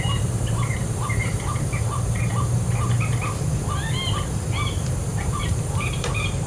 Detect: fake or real fake